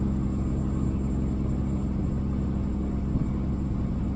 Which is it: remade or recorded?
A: recorded